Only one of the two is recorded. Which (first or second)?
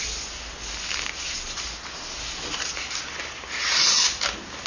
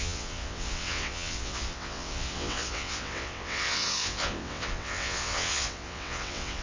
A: first